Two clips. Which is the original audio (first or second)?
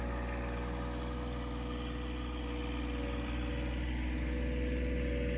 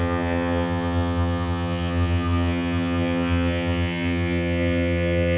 first